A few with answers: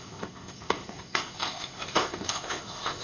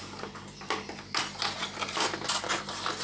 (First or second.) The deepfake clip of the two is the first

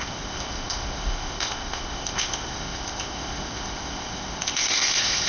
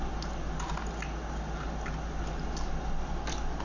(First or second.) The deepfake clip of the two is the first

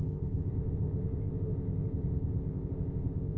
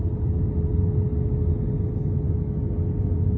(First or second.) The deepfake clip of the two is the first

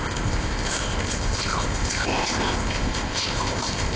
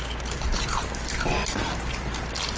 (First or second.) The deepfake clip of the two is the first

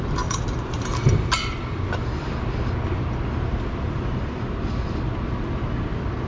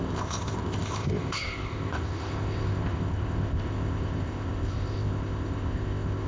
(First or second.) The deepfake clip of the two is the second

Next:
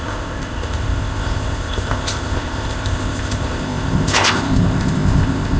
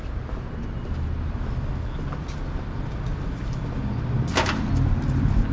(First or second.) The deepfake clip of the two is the first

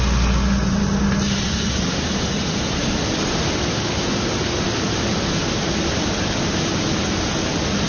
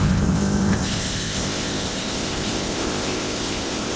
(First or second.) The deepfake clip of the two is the second